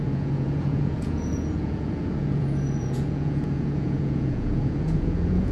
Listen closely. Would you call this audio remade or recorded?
remade